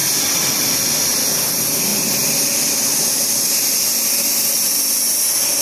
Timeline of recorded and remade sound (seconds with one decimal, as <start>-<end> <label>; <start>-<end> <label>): 0.0-5.6 recorded

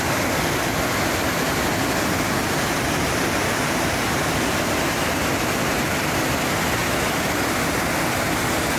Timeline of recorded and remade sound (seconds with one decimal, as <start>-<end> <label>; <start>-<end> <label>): 0.0-8.8 recorded

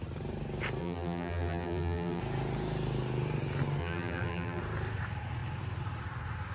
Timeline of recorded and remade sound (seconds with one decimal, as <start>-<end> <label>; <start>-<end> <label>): 0.0-0.8 recorded; 0.8-2.2 remade; 2.2-3.8 recorded; 3.8-4.6 remade; 4.6-6.5 recorded

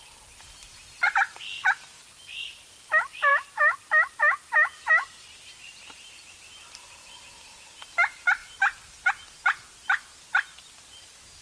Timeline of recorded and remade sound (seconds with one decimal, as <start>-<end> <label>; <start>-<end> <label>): 0.0-11.4 recorded

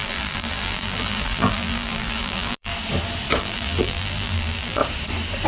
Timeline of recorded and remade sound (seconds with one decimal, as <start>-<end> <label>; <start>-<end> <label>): 0.0-2.7 remade; 2.7-3.4 recorded; 3.4-4.8 remade; 4.8-5.5 recorded

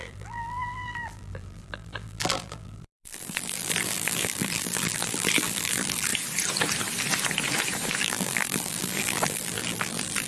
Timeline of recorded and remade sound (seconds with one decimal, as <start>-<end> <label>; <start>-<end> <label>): 0.0-6.1 remade; 6.1-8.0 recorded; 8.0-10.3 remade